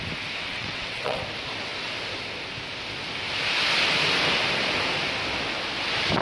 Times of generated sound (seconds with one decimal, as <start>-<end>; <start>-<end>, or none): 0.4-1.2